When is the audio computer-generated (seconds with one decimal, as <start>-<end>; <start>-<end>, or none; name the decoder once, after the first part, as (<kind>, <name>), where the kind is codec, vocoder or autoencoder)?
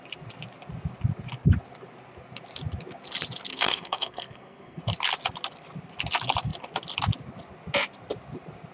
3.5-4.8 (codec, SNAC)